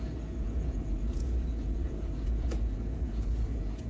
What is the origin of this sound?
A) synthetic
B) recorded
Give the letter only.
A